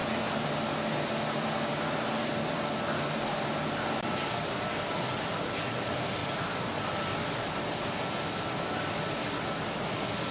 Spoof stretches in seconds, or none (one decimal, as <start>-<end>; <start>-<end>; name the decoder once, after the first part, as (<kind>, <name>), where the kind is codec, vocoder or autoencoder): 6.2-6.8 (vocoder, BigVGAN v2)